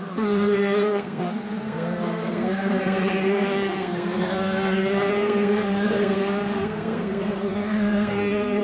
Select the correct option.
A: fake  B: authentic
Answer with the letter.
A